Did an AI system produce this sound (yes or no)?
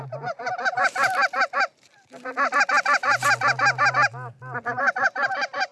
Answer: no